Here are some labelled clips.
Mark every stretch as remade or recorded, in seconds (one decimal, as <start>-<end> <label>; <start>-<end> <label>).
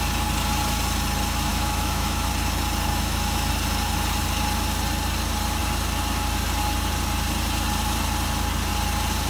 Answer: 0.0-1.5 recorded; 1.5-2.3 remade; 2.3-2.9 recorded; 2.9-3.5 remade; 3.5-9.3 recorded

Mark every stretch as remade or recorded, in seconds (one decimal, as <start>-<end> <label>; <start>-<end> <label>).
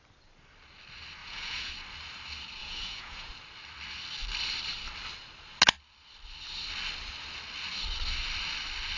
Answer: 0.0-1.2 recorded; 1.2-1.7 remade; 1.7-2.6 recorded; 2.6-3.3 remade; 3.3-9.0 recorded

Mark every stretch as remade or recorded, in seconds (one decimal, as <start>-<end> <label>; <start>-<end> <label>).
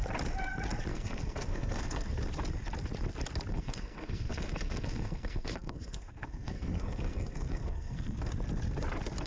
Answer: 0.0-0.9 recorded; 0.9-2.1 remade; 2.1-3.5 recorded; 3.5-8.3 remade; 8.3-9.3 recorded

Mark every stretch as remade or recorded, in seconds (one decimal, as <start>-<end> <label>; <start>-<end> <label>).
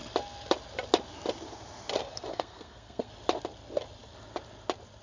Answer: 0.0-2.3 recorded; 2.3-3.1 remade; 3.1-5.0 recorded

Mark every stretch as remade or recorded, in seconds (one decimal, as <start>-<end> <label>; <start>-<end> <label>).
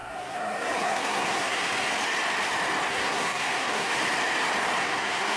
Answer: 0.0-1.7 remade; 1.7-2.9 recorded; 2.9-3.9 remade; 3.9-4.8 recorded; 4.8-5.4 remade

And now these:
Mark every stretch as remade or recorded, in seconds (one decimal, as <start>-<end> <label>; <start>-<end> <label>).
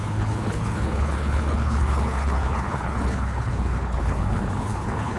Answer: 0.0-5.2 remade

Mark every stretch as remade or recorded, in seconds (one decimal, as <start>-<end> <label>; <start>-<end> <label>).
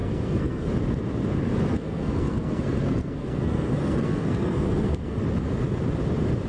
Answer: 0.0-0.7 remade; 0.7-1.7 recorded; 1.7-5.2 remade; 5.2-6.5 recorded